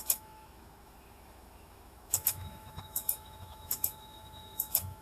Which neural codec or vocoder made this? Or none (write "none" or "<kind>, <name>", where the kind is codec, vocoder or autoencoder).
autoencoder, DAC-VAE